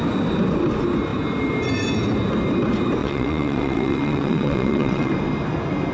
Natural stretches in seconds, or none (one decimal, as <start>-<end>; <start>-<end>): 0.0-3.0; 5.1-5.9